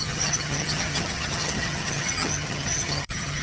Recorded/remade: remade